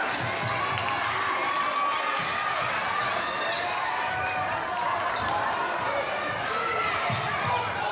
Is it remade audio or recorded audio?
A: recorded